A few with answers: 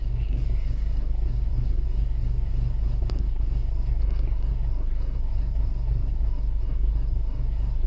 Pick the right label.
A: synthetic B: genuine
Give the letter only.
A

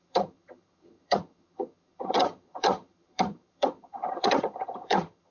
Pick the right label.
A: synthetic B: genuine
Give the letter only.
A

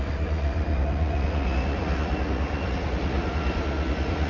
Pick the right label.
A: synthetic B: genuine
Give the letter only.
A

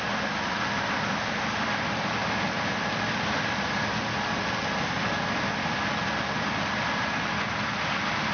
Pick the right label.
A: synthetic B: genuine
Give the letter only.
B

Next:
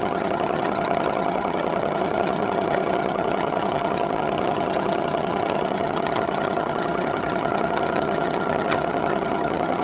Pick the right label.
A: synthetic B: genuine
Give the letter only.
A